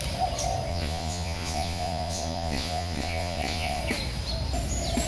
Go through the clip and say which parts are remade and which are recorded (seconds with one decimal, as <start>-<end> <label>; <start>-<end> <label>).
0.0-0.7 recorded; 0.7-3.8 remade; 3.8-5.1 recorded